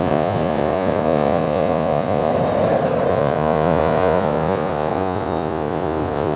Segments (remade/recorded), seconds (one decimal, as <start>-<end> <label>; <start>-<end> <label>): 0.0-2.3 remade; 2.3-3.1 recorded; 3.1-6.4 remade